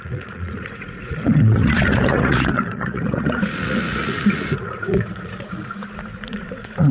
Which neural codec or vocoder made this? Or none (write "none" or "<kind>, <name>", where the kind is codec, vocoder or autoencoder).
vocoder, Vocos